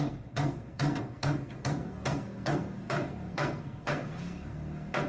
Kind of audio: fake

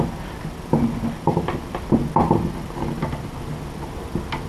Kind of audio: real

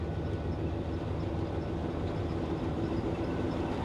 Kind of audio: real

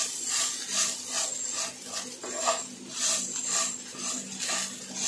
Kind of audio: real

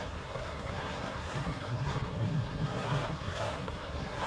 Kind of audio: fake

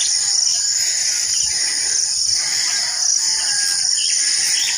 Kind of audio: real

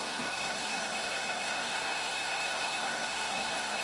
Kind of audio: fake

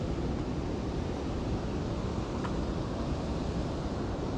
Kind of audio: real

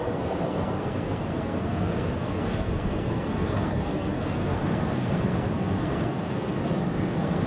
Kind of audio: fake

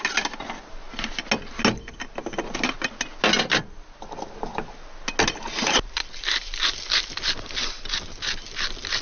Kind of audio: real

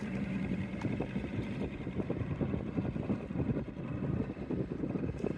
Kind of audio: fake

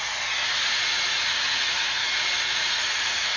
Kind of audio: fake